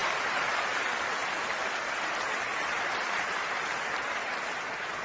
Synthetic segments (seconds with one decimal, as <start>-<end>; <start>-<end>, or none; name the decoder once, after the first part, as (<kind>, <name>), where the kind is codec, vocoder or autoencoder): 0.0-0.5 (vocoder, BigVGAN v2); 2.5-4.3